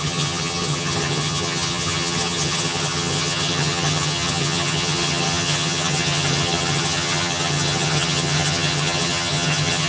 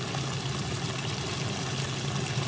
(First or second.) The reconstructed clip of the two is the first